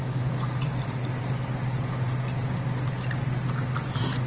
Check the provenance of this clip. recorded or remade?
recorded